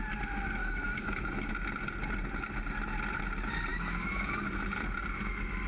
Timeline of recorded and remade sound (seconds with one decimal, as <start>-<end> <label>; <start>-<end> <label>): 0.0-0.6 recorded; 0.6-1.5 remade; 1.5-3.7 recorded; 3.7-4.4 remade; 4.4-5.7 recorded